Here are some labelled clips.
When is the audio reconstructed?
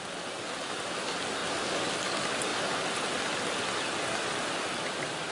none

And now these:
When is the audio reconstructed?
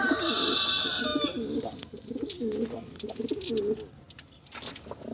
none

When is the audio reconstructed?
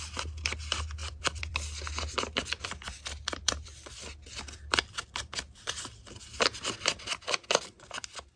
1.0-5.7 (vocoder, BigVGAN v2)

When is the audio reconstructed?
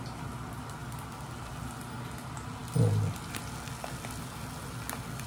none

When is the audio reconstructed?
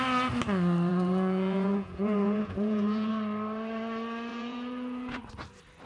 0.9-3.1 (vocoder, Vocos); 4.3-5.2